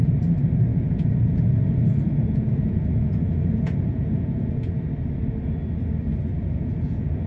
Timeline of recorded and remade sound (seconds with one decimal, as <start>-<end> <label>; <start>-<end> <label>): 0.0-0.7 recorded; 0.7-4.8 remade; 4.8-6.3 recorded; 6.3-7.3 remade